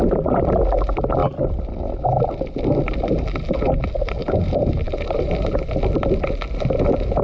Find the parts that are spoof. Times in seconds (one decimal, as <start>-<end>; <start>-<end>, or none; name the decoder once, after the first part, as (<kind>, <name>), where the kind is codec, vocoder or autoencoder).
4.2-5.6 (vocoder, BigVGAN v2)